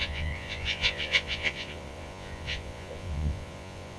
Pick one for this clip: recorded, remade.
remade